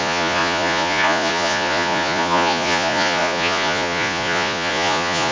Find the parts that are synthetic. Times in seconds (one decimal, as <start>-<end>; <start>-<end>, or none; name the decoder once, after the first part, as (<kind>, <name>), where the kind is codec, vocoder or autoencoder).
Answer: 0.0-5.3 (vocoder, Vocos)

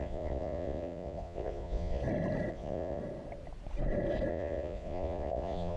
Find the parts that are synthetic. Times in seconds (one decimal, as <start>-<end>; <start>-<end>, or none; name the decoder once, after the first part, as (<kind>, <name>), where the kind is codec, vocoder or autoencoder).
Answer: 0.0-2.0 (vocoder, Vocos); 2.5-3.0; 4.3-5.8

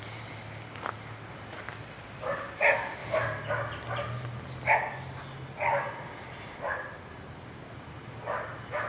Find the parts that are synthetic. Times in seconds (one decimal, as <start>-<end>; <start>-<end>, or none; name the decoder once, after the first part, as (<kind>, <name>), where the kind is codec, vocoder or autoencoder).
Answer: none

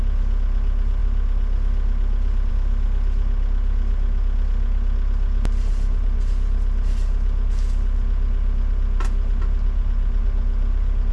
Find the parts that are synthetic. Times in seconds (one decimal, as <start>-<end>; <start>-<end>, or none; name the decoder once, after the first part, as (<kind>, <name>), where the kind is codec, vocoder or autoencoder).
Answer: none

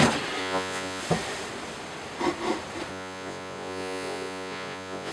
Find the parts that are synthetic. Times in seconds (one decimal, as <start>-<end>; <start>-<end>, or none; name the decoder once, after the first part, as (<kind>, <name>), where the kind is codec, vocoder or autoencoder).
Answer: 0.4-1.0 (vocoder, Vocos); 2.9-5.1

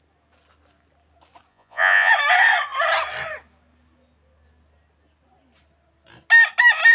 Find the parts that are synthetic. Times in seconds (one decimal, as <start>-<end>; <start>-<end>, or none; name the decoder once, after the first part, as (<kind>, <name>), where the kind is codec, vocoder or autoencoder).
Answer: 1.5-2.1 (vocoder, Vocos)

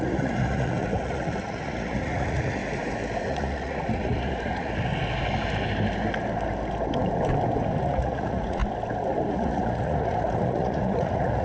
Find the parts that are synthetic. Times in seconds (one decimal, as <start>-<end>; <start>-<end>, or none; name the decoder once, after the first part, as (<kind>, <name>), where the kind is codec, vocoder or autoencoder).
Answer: 0.0-2.6 (vocoder, Vocos); 3.2-4.9; 7.8-8.6; 9.3-11.4

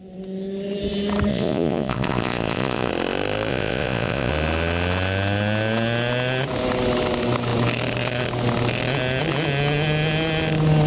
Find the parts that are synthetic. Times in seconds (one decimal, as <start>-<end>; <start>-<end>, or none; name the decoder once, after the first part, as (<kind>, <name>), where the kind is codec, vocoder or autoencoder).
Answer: 1.3-2.9 (vocoder, Vocos); 3.5-4.3